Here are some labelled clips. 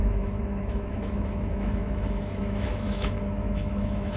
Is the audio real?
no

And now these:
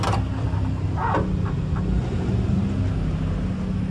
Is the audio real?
yes